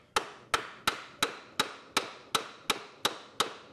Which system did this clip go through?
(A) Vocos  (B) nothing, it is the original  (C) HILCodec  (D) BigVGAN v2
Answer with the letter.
B